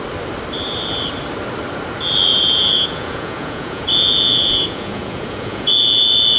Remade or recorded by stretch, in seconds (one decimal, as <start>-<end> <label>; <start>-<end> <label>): 0.0-2.3 recorded; 2.3-6.4 remade